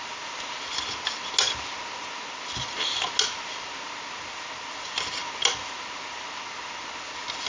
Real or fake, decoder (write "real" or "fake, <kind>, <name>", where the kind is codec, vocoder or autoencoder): real